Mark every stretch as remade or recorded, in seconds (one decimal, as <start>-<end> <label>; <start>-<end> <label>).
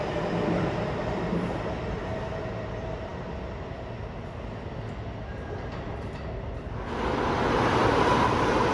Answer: 0.0-8.7 recorded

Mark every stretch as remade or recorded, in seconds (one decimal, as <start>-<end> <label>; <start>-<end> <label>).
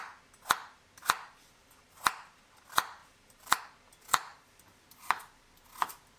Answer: 0.0-1.6 recorded; 1.6-2.4 remade; 2.4-3.0 recorded; 3.0-3.6 remade; 3.6-6.2 recorded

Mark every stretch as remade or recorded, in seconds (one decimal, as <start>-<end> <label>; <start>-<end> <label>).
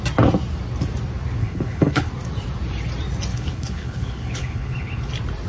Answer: 0.0-1.4 recorded; 1.4-2.1 remade; 2.1-3.3 recorded; 3.3-5.1 remade; 5.1-5.5 recorded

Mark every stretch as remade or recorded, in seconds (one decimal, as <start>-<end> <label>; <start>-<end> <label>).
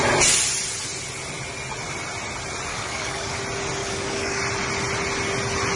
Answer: 0.0-2.7 recorded; 2.7-3.4 remade; 3.4-3.8 recorded; 3.8-4.4 remade; 4.4-5.8 recorded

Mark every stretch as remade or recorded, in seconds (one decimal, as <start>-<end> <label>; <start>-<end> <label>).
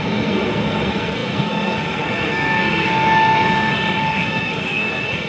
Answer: 0.0-5.3 remade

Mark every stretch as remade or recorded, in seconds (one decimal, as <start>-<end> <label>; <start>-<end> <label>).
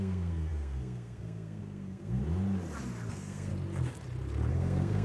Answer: 0.0-2.2 remade; 2.2-3.1 recorded; 3.1-3.5 remade; 3.5-4.5 recorded; 4.5-5.0 remade